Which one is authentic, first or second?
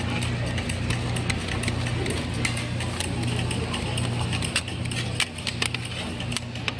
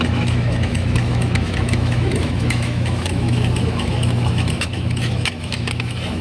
first